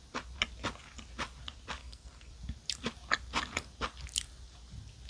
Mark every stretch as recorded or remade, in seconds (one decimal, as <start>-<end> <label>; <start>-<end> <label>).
0.0-1.8 recorded; 1.8-2.3 remade; 2.3-5.1 recorded

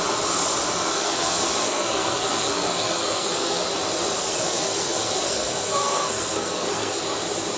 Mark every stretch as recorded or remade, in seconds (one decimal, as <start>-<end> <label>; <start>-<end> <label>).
0.0-0.9 recorded; 0.9-3.6 remade; 3.6-4.2 recorded; 4.2-7.0 remade; 7.0-7.6 recorded

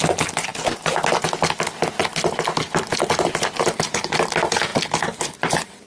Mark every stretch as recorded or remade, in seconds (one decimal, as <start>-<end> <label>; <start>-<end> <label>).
0.0-5.9 recorded

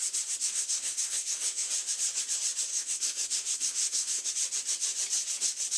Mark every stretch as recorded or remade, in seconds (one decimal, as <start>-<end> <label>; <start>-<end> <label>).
0.0-0.4 recorded; 0.4-1.7 remade; 1.7-2.7 recorded; 2.7-4.3 remade; 4.3-5.8 recorded